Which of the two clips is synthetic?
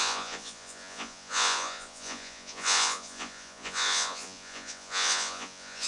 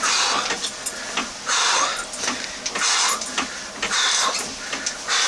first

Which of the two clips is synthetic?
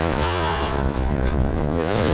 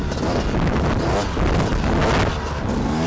first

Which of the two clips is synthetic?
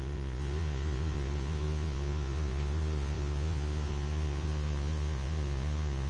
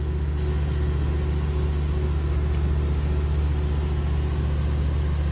first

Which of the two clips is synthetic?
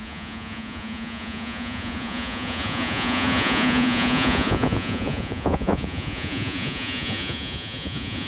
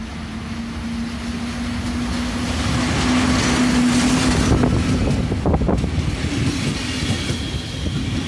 first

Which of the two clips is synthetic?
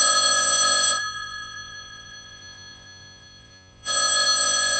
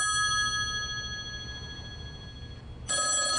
first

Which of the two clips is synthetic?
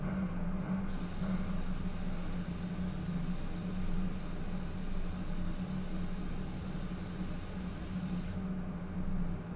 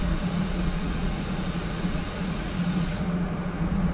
second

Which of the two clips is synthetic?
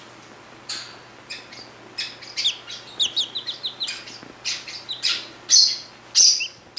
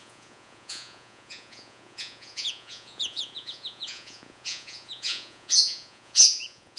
second